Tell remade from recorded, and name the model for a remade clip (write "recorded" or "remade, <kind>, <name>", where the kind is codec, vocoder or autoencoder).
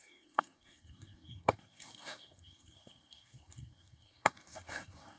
remade, codec, SNAC